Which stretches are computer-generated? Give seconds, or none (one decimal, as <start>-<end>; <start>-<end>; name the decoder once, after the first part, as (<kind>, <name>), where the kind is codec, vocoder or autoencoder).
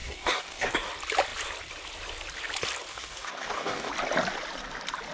0.0-0.7 (codec, DAC); 2.9-3.9